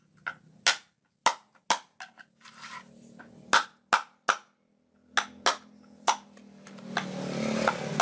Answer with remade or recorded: recorded